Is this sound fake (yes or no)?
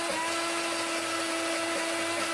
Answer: no